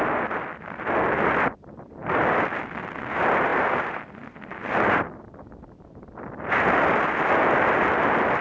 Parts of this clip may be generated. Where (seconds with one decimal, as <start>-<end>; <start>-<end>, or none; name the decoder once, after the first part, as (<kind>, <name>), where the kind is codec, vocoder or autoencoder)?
2.0-2.6 (vocoder, BigVGAN v2); 3.5-7.1